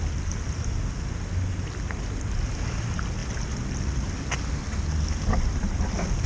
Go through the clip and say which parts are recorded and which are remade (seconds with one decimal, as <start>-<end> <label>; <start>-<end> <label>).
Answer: 0.0-6.3 recorded